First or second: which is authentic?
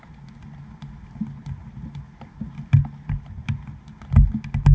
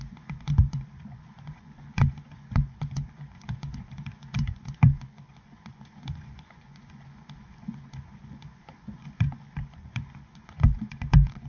first